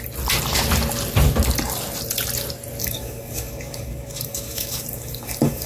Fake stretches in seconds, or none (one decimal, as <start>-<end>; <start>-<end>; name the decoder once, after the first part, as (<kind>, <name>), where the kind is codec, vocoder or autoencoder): 2.8-5.7 (codec, DAC)